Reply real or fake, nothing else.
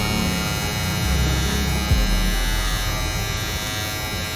real